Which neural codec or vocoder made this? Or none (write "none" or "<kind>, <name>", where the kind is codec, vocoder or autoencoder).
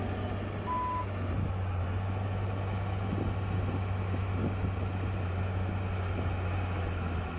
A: none